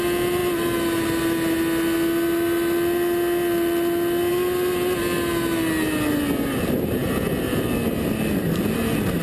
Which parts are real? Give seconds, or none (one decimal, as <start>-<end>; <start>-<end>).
0.0-9.2